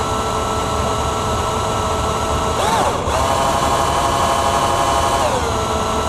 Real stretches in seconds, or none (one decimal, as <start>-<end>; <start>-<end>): 0.0-0.6; 4.3-6.1